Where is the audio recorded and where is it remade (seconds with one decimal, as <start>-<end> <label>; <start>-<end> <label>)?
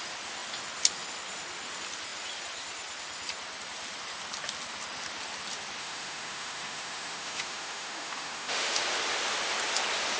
0.0-5.8 recorded; 5.8-8.8 remade; 8.8-10.2 recorded